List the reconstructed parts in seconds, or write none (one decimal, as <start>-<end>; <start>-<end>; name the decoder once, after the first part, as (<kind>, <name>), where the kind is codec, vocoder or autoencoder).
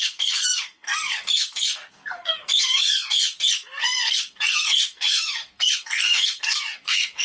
0.0-7.2 (codec, SNAC)